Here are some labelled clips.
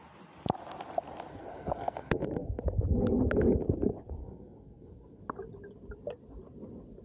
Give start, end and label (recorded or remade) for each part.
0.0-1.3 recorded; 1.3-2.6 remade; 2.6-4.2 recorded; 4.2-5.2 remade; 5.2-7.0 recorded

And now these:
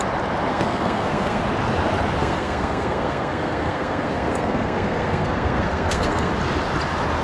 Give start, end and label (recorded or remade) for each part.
0.0-0.5 recorded; 0.5-1.4 remade; 1.4-2.2 recorded; 2.2-6.3 remade; 6.3-7.2 recorded

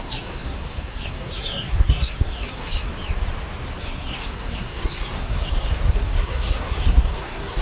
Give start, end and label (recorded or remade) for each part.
0.0-2.9 remade; 2.9-3.8 recorded; 3.8-7.6 remade

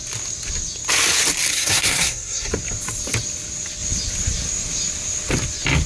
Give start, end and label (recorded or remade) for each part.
0.0-1.5 recorded; 1.5-2.5 remade; 2.5-5.9 recorded

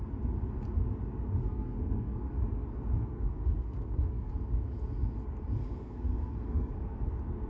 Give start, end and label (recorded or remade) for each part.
0.0-1.4 recorded; 1.4-2.3 remade; 2.3-3.0 recorded; 3.0-4.3 remade; 4.3-5.8 recorded; 5.8-7.1 remade; 7.1-7.5 recorded

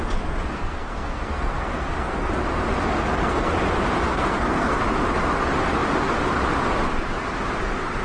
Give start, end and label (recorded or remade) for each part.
0.0-0.5 recorded; 0.5-2.3 remade; 2.3-3.0 recorded; 3.0-3.5 remade; 3.5-4.1 recorded; 4.1-4.8 remade; 4.8-8.0 recorded

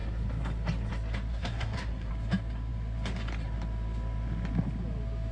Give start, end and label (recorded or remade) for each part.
0.0-1.3 recorded; 1.3-2.1 remade; 2.1-5.3 recorded

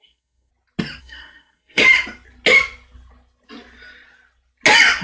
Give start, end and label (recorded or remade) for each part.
0.0-0.5 remade; 0.5-1.0 recorded; 1.0-1.8 remade; 1.8-5.0 recorded